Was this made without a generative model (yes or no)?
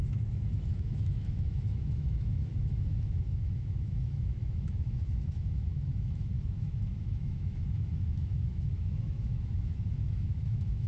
no